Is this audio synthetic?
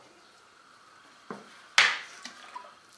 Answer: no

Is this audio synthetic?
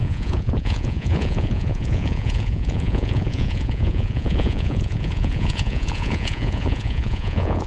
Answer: yes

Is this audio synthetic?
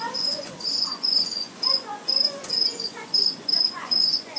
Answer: yes